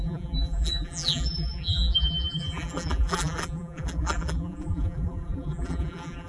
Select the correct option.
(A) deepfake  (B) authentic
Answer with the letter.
A